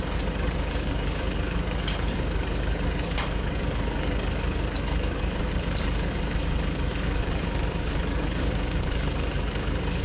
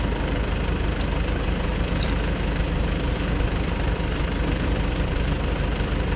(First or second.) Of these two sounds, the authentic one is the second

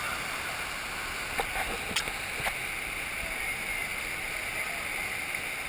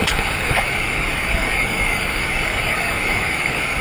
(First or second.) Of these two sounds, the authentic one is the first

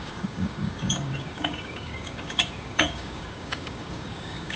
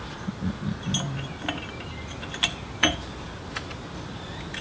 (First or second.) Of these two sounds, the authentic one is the second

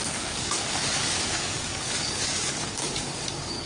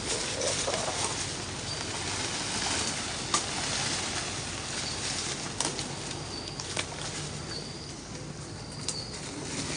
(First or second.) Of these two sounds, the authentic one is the second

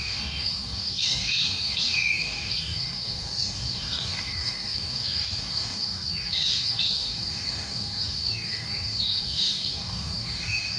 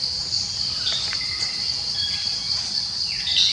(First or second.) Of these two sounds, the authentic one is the second